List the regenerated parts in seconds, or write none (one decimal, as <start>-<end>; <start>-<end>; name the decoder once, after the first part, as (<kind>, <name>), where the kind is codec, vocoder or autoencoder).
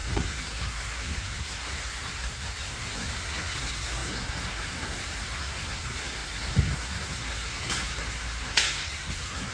0.0-9.5 (codec, SNAC)